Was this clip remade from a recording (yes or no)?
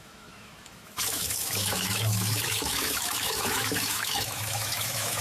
yes